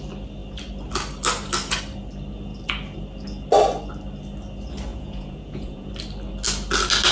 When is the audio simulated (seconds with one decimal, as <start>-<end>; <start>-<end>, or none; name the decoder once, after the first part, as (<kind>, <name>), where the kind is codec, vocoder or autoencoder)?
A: 4.9-5.9 (vocoder, Vocos)